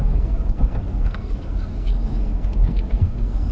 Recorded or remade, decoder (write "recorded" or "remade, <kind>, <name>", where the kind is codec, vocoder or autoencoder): remade, codec, SNAC